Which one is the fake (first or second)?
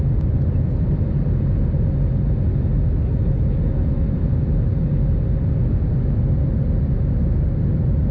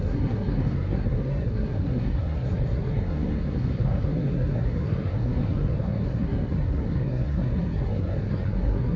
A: second